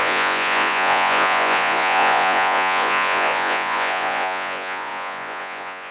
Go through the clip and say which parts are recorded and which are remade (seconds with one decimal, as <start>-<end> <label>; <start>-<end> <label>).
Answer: 0.0-5.9 remade